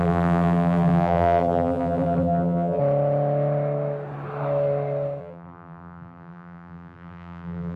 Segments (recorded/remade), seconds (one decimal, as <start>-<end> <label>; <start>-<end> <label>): 0.0-2.8 remade; 2.8-5.2 recorded; 5.2-7.8 remade